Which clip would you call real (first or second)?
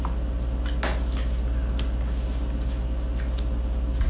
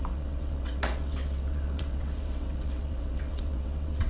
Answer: first